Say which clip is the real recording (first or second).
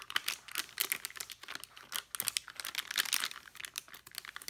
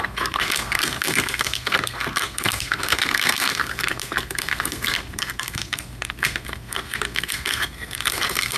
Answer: first